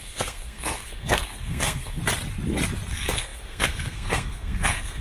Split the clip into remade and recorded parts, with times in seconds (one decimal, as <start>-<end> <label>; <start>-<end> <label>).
0.0-2.0 remade; 2.0-2.9 recorded; 2.9-5.0 remade